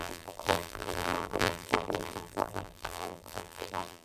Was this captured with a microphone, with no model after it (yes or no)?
no